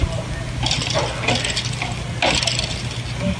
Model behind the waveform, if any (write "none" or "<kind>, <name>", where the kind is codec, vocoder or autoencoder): none